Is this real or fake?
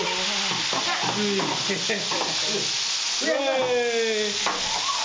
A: real